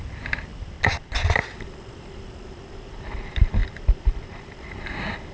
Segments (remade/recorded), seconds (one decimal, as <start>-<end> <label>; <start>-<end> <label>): 0.0-5.3 recorded